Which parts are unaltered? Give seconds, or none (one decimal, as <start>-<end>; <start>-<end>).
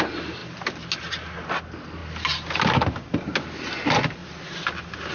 0.0-5.1